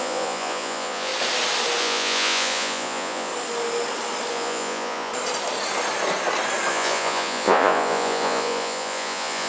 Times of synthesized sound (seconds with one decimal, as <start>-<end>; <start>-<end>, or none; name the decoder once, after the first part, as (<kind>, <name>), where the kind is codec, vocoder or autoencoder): 0.0-1.1 (vocoder, Vocos); 1.8-3.3; 4.3-5.1; 6.7-9.5